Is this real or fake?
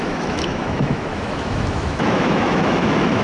fake